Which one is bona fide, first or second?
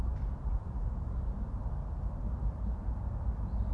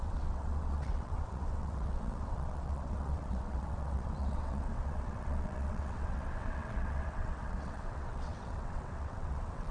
first